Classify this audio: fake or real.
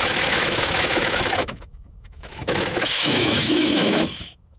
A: fake